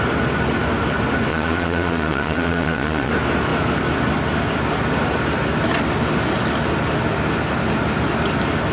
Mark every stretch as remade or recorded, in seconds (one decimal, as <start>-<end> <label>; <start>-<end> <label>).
0.0-1.3 recorded; 1.3-3.1 remade; 3.1-8.7 recorded